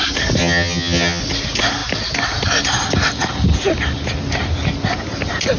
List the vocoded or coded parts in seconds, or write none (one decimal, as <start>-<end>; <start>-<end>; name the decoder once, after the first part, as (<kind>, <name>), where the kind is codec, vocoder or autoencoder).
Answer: 0.4-1.2 (vocoder, HiFi-GAN)